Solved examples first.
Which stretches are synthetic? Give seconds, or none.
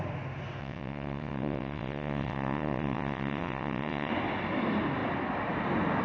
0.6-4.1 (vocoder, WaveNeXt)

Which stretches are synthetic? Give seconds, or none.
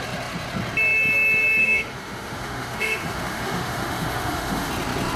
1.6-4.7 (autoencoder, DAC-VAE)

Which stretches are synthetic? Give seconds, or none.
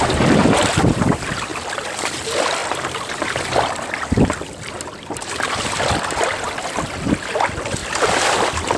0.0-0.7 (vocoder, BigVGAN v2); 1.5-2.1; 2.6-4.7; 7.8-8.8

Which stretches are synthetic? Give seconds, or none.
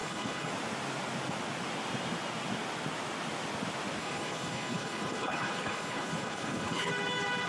0.0-0.5 (codec, HILCodec); 4.0-6.9